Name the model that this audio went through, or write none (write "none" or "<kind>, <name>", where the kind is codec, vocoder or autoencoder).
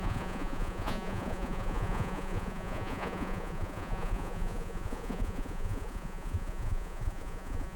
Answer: vocoder, Vocos